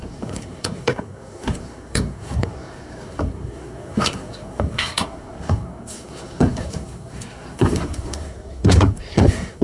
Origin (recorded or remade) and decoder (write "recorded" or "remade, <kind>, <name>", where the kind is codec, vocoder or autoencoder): remade, codec, SNAC